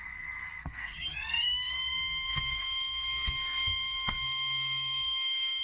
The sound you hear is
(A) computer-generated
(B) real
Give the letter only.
A